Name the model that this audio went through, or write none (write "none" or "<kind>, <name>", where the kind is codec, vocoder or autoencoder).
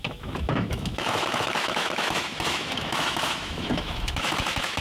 autoencoder, DAC-VAE